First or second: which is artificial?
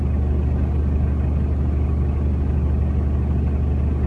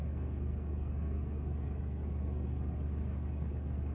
second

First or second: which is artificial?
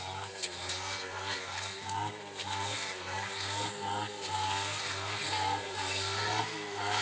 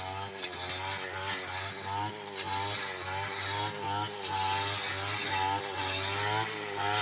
first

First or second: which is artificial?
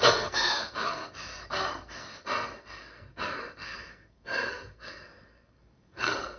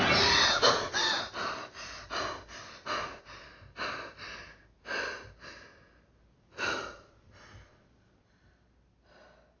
first